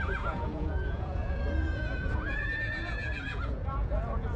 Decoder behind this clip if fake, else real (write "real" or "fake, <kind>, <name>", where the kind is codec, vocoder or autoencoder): fake, vocoder, Vocos